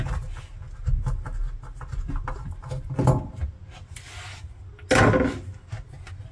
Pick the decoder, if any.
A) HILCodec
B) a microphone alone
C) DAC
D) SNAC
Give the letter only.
B